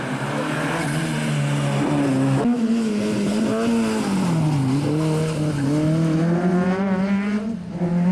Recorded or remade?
recorded